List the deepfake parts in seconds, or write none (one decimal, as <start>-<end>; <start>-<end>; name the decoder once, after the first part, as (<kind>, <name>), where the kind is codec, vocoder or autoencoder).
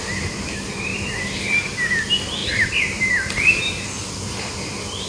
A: 0.9-1.5 (vocoder, BigVGAN v2); 2.4-3.7